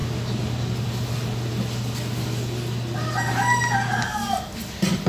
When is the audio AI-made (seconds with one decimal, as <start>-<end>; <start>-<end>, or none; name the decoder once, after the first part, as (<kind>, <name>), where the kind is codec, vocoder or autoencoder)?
none